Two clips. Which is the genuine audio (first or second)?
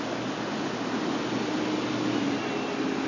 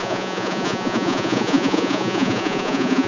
first